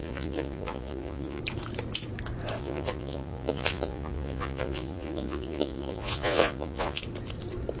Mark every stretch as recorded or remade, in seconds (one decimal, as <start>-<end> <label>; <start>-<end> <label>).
0.0-1.4 remade; 1.4-2.6 recorded; 2.6-7.0 remade; 7.0-7.8 recorded